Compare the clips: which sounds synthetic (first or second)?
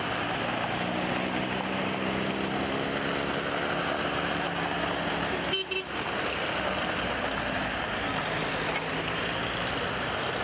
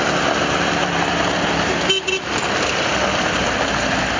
second